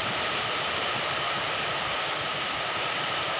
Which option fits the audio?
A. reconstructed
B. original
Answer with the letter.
A